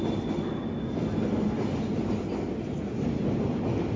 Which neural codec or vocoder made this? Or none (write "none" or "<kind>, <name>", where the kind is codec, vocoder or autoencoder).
none